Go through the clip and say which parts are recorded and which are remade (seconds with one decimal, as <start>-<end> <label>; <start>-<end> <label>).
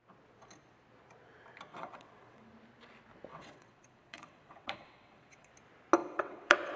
0.0-1.7 recorded; 1.7-2.5 remade; 2.5-3.3 recorded; 3.3-5.5 remade; 5.5-6.0 recorded; 6.0-6.8 remade